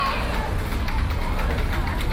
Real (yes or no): yes